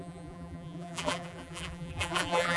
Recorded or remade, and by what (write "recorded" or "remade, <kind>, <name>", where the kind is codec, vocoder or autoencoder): remade, vocoder, BigVGAN v2